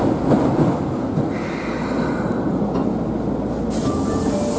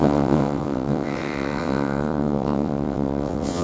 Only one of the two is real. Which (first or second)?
first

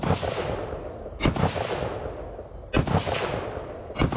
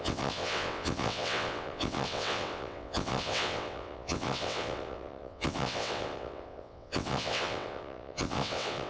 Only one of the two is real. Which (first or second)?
first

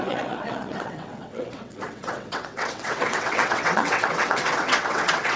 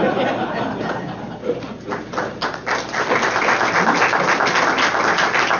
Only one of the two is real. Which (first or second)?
second